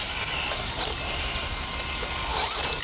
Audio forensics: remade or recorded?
recorded